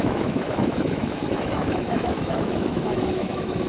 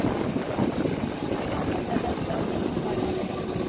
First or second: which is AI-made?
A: first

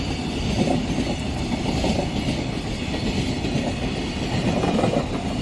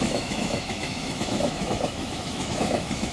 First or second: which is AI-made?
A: second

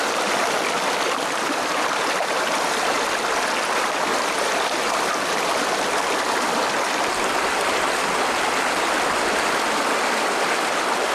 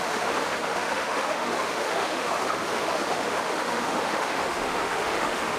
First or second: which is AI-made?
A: second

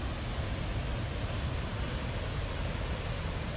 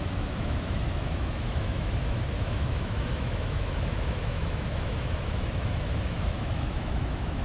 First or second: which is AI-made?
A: second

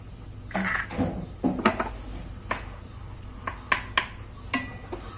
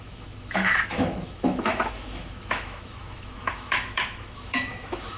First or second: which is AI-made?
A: second